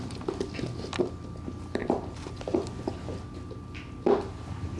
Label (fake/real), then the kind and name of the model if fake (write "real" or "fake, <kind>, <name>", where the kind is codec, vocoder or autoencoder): real